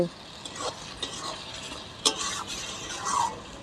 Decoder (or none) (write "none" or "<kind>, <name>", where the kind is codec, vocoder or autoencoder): none